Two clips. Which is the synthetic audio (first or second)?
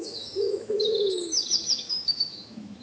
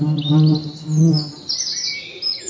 first